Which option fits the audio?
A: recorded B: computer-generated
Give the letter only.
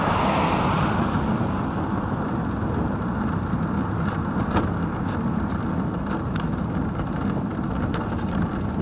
A